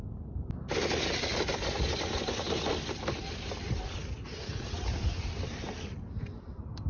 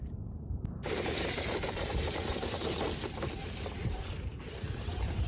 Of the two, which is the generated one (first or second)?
second